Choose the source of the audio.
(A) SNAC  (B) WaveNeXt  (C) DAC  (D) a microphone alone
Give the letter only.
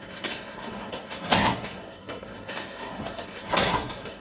A